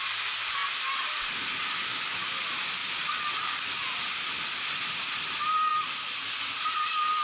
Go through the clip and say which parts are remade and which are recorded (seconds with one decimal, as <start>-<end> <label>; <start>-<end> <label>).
0.0-7.2 recorded